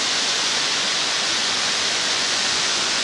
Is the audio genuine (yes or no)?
no